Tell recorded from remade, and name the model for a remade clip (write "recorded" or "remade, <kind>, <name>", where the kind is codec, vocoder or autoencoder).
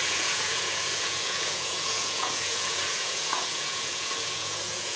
remade, vocoder, Vocos